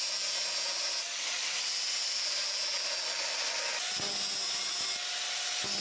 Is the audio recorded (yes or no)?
yes